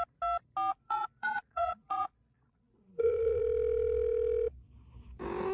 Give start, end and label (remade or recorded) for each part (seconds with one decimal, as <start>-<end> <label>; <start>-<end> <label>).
0.0-0.7 recorded; 0.7-3.4 remade; 3.4-5.5 recorded